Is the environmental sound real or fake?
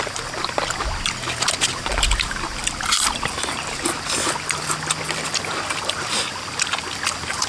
real